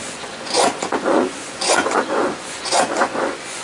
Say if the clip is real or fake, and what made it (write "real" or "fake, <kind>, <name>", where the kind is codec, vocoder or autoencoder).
fake, vocoder, Vocos